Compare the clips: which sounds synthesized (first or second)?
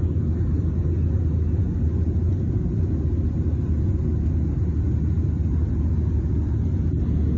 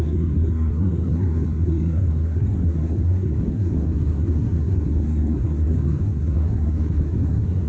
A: second